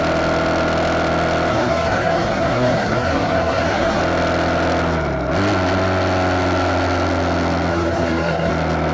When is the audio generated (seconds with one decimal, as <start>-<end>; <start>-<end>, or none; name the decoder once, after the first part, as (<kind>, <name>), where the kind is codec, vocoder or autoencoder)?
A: 1.5-4.0 (codec, SNAC); 7.7-8.5